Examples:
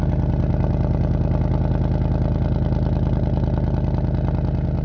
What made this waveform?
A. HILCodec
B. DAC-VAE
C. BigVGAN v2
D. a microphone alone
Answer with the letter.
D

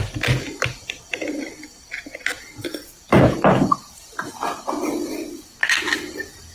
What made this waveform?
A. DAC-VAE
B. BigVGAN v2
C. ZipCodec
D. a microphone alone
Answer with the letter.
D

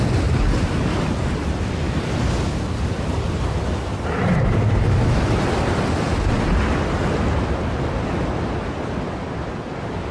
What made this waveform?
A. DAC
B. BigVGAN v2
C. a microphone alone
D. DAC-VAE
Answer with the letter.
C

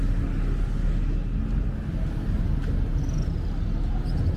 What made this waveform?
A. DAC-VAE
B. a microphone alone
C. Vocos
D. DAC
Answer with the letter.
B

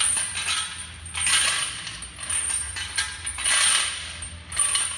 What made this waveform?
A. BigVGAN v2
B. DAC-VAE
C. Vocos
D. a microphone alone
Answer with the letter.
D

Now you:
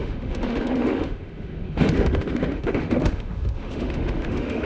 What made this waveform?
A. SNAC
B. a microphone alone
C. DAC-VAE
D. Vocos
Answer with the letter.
C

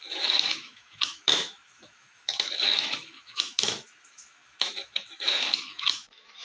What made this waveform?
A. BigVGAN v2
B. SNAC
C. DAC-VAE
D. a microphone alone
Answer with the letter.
C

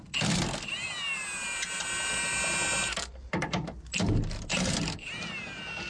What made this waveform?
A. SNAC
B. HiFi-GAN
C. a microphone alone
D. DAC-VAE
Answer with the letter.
C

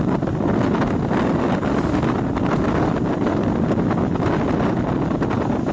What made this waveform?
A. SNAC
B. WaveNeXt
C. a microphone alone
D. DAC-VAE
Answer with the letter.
C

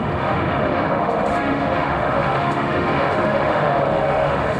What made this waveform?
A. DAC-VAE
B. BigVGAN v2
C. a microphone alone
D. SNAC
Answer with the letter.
A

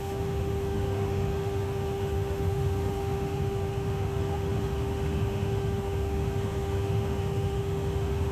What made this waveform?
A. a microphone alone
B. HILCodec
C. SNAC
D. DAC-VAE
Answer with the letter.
D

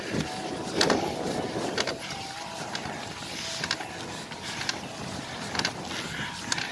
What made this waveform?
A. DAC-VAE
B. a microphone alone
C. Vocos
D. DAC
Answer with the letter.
B